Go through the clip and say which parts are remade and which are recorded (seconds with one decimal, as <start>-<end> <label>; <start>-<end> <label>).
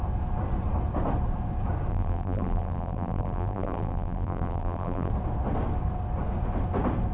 0.0-1.9 recorded; 1.9-5.1 remade; 5.1-7.1 recorded